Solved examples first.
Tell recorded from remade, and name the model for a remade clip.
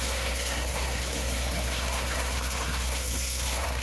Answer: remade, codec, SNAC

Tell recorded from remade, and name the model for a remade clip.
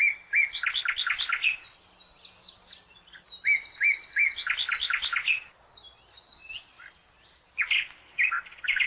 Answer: recorded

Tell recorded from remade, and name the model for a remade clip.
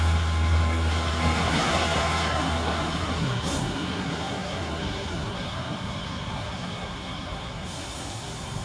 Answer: remade, codec, SNAC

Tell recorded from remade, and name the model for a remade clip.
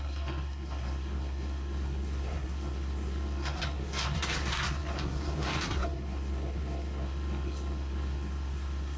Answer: remade, codec, SNAC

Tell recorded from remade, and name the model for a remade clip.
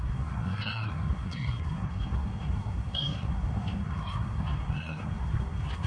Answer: remade, codec, SNAC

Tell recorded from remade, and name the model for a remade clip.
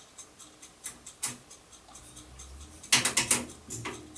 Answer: recorded